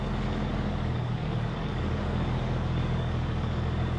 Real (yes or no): no